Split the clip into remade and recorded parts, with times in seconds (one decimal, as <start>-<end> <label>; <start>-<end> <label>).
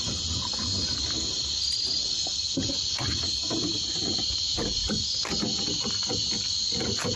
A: 0.0-4.5 remade; 4.5-5.6 recorded; 5.6-7.2 remade